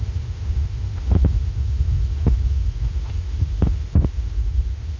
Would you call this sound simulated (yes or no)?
yes